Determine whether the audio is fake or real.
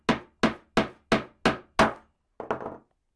real